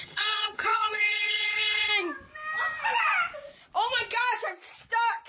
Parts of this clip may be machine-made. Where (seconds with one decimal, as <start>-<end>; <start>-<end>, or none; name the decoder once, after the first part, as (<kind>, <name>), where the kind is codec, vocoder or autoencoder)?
0.0-1.9 (vocoder, HiFi-GAN)

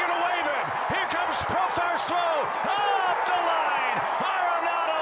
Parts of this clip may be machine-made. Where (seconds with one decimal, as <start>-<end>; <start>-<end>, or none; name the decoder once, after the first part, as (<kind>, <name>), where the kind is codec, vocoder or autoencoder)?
none